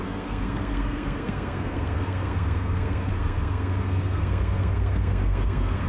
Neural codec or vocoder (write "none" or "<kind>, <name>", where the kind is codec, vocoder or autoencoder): codec, SNAC